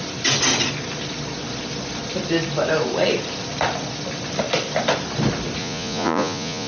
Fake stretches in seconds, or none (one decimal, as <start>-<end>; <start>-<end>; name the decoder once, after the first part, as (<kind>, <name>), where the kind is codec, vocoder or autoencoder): 5.6-6.7 (vocoder, Vocos)